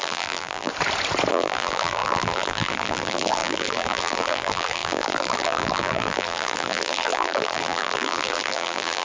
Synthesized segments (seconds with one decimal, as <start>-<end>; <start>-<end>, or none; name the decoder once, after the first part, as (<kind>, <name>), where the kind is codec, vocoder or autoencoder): 0.0-0.7 (vocoder, BigVGAN v2); 1.3-9.0